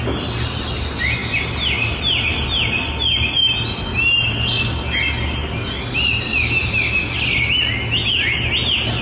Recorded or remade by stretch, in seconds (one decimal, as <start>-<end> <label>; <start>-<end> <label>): 0.0-9.0 recorded